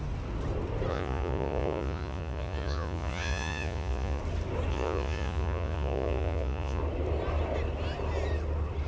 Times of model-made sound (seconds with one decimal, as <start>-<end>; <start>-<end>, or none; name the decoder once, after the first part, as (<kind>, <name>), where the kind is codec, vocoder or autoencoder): 0.9-4.2 (vocoder, Vocos); 4.7-6.8